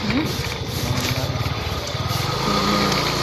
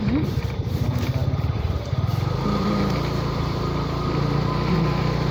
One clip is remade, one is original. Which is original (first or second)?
first